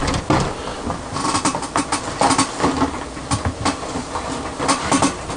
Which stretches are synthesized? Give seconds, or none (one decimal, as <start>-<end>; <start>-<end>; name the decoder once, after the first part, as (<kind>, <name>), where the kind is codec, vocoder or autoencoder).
none